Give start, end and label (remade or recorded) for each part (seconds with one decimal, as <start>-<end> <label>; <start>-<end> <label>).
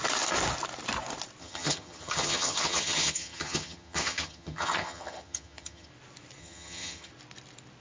0.0-1.4 recorded; 1.4-5.9 remade; 5.9-6.4 recorded; 6.4-7.1 remade; 7.1-7.8 recorded